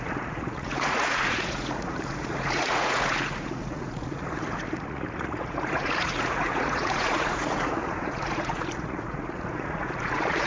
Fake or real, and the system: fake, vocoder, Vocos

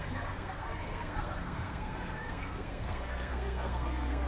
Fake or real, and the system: fake, codec, SNAC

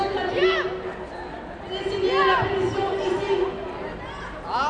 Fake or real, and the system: real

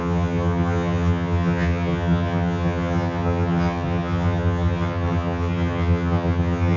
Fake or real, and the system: fake, vocoder, HiFi-GAN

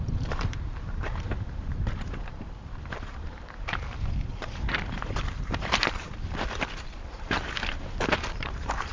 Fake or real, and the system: fake, vocoder, BigVGAN v2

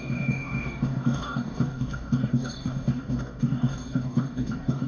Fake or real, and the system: fake, codec, DAC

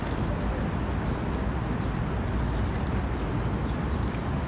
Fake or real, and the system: real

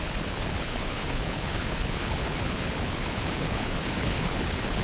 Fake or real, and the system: fake, codec, HILCodec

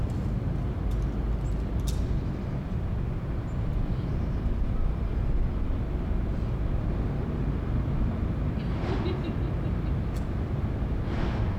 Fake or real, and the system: real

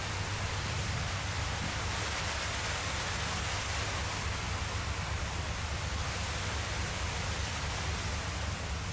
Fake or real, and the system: real